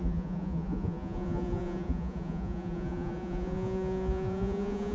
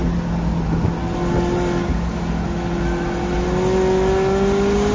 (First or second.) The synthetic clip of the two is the first